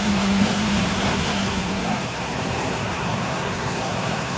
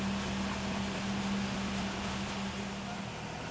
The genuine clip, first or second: second